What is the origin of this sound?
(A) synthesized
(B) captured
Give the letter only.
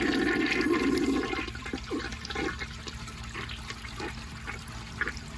B